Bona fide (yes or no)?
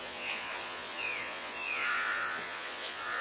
no